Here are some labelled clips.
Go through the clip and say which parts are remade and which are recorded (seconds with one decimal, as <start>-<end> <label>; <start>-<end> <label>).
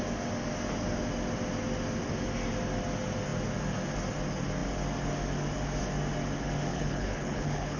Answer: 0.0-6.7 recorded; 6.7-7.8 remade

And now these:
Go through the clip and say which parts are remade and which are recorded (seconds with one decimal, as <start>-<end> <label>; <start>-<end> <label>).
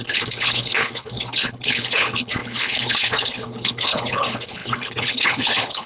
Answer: 0.0-5.9 remade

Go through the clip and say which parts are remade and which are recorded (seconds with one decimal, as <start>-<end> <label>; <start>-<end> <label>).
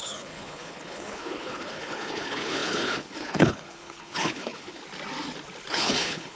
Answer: 0.0-4.8 remade; 4.8-5.7 recorded; 5.7-6.4 remade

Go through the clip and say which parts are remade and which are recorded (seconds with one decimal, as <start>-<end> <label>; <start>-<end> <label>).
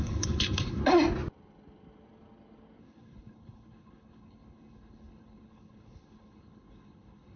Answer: 0.0-0.8 remade; 0.8-2.8 recorded; 2.8-7.4 remade